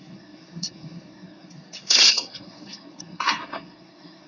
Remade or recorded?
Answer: remade